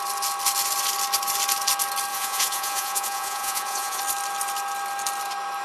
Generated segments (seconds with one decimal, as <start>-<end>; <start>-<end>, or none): 2.1-4.0